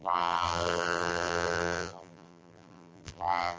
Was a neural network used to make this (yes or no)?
yes